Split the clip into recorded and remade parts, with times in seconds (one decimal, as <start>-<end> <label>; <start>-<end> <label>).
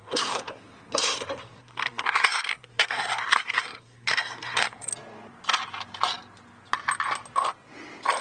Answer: 0.0-4.9 remade; 4.9-8.2 recorded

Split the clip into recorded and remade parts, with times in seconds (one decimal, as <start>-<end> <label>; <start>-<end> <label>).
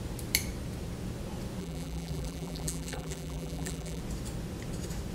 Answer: 0.0-1.6 recorded; 1.6-4.0 remade; 4.0-5.1 recorded